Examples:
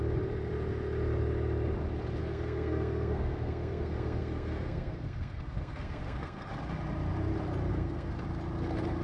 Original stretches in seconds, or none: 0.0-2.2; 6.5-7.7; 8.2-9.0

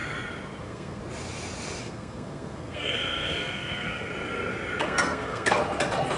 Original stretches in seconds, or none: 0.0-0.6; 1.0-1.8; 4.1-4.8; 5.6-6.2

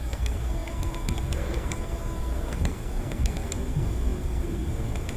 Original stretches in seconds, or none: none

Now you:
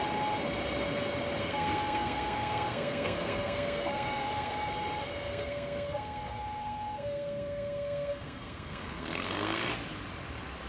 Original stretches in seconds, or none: 0.0-1.4; 4.7-5.3; 9.7-10.7

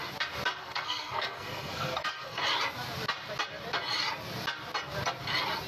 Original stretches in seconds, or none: 0.0-0.6; 2.4-5.7